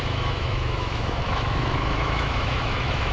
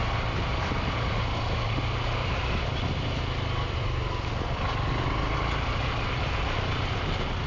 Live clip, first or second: second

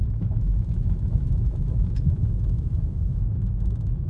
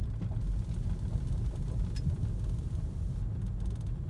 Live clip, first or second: second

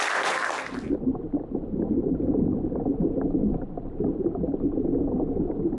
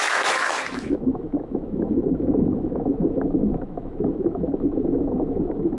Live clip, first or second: first